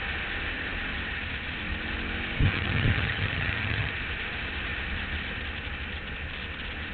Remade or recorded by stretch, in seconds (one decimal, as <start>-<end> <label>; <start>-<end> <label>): 0.0-2.4 recorded; 2.4-3.9 remade; 3.9-6.9 recorded